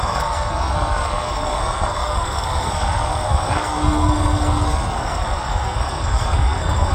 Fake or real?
fake